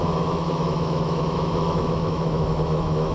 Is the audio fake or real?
fake